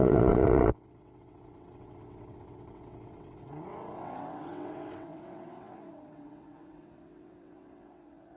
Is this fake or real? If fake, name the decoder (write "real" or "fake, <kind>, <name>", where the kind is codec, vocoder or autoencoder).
fake, vocoder, WaveNeXt